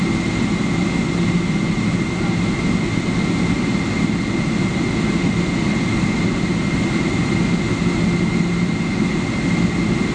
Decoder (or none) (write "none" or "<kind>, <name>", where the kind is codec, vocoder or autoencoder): none